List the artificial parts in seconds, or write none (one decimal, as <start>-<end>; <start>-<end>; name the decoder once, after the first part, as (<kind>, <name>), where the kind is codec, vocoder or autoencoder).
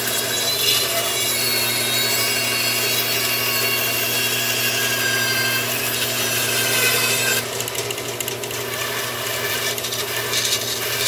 none